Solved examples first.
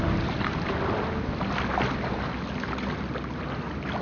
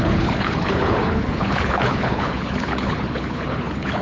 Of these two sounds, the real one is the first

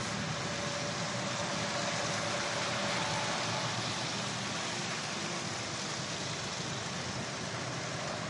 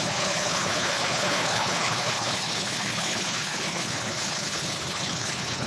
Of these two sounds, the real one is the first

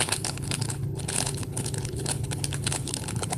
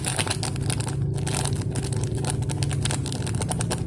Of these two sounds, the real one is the second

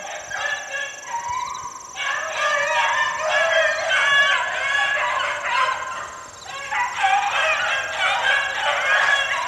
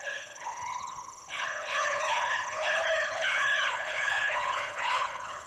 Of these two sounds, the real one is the first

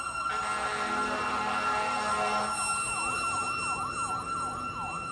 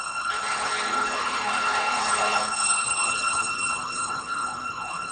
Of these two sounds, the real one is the first